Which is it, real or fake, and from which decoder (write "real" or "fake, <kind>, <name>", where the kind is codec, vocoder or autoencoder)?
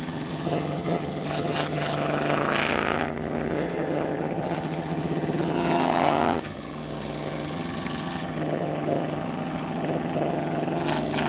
fake, vocoder, HiFi-GAN